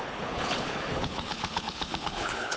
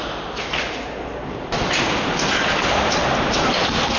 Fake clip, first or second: first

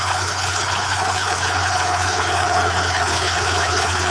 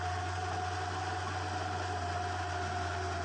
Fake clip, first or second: first